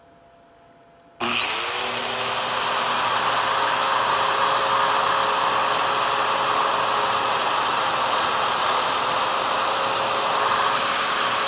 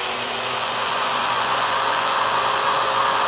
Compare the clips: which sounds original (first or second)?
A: first